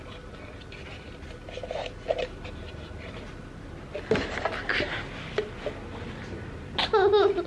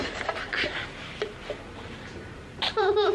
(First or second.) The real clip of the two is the first